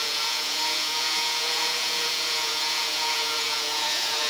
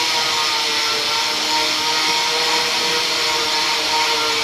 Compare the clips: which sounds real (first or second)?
second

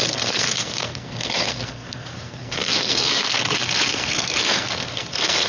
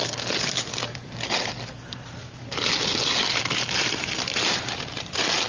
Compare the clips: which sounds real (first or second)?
second